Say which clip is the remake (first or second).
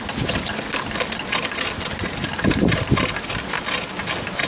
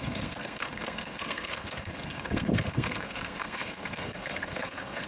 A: second